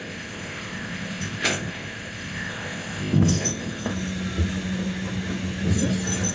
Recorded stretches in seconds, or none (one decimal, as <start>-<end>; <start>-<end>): 3.9-6.3